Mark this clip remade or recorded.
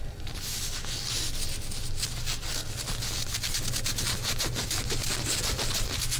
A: recorded